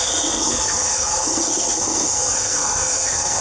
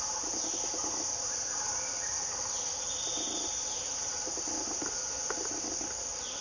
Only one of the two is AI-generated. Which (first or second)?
first